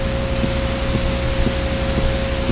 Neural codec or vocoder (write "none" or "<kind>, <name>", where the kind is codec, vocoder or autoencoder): none